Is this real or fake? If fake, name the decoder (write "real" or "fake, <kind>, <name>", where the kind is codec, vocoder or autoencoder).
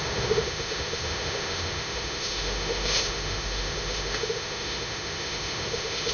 fake, autoencoder, DAC-VAE